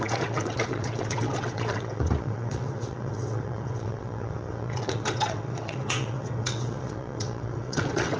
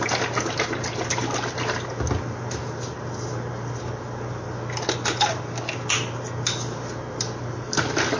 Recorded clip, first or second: second